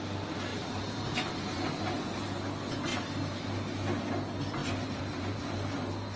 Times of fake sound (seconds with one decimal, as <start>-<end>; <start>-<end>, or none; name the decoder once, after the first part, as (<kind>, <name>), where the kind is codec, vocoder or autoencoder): 0.5-1.8 (vocoder, BigVGAN v2); 4.6-5.4